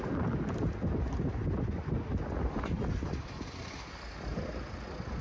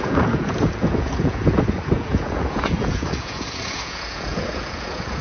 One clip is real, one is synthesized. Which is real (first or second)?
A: first